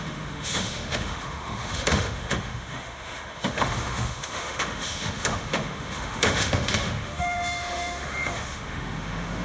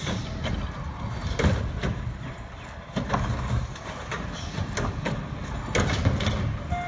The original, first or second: second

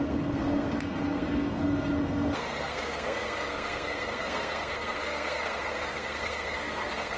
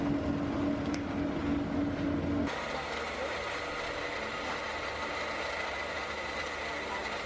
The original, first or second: second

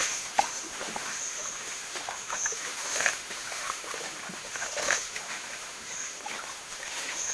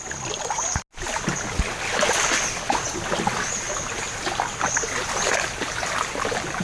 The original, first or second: second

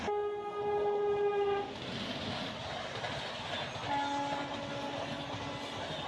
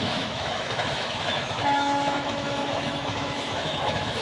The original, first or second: first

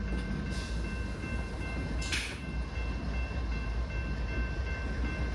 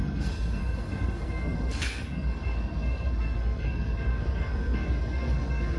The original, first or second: first